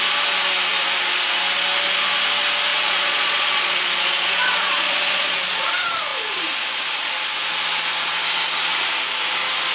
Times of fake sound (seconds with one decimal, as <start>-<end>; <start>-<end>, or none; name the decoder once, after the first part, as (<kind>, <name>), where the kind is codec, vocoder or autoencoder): 2.7-5.6 (vocoder, Vocos)